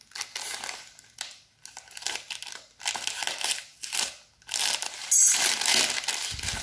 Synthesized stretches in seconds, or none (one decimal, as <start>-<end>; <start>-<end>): none